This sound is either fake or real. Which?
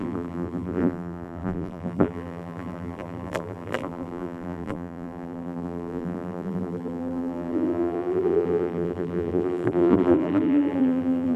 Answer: fake